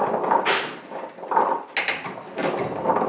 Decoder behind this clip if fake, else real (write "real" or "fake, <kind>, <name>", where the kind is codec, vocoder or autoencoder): real